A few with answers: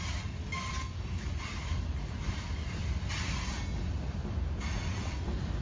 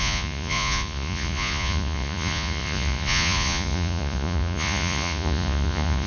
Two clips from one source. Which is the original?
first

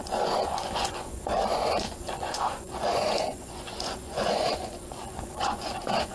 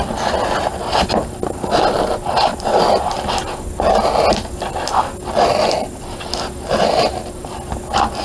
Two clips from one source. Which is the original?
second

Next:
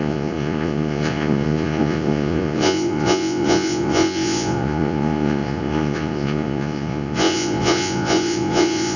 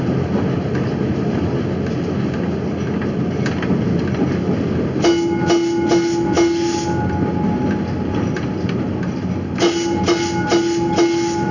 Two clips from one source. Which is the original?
second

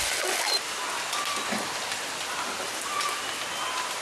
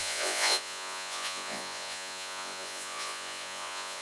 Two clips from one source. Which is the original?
first